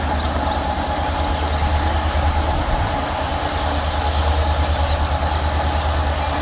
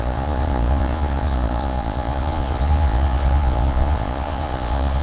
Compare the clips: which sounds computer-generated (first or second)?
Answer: second